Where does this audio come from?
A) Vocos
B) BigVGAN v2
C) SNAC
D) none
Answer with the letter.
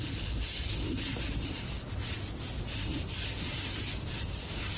D